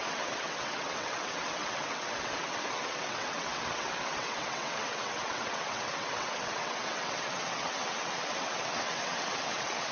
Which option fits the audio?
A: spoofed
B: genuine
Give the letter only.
A